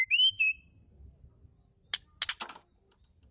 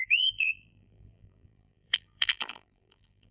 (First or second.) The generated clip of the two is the second